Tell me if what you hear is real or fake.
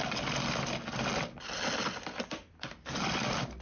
real